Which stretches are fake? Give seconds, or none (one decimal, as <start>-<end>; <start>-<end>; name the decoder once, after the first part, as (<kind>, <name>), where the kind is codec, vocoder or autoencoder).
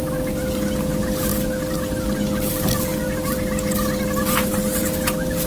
none